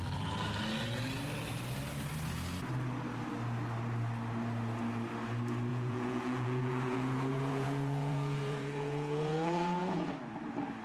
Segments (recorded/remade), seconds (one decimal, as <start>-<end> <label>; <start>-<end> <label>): 0.0-5.7 recorded; 5.7-10.1 remade; 10.1-10.8 recorded